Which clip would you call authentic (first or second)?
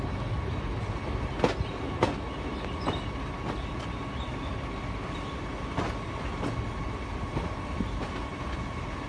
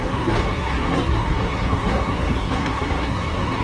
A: first